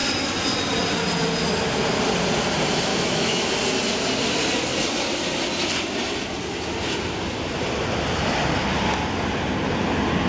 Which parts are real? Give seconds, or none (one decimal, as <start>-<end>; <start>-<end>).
0.0-2.9; 3.5-10.3